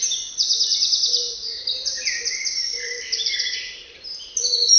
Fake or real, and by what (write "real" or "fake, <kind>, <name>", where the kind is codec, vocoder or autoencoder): fake, vocoder, BigVGAN v2